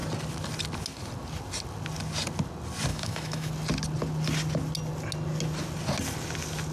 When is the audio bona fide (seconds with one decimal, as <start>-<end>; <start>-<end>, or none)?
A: 0.0-2.9; 3.5-6.7